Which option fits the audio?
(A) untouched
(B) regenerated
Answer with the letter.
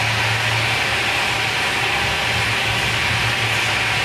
A